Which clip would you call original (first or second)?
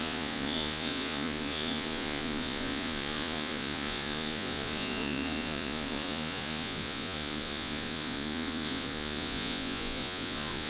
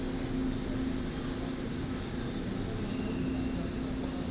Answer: second